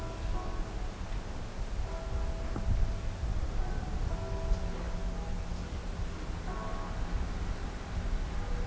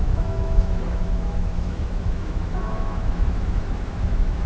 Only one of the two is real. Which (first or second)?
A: first